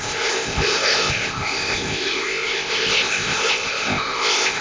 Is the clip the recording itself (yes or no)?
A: no